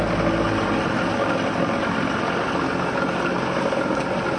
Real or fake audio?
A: real